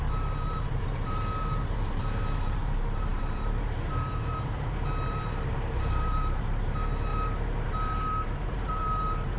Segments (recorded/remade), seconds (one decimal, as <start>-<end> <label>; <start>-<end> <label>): 0.0-9.4 remade